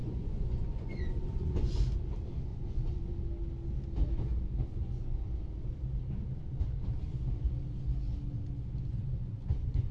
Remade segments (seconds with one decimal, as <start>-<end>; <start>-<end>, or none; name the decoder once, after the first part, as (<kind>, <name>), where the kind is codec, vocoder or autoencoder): 0.0-1.8 (vocoder, Vocos); 2.5-3.1; 4.7-5.3; 9.0-9.9